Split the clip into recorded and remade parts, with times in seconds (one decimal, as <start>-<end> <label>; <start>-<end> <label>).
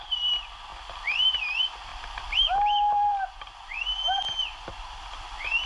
0.0-5.7 recorded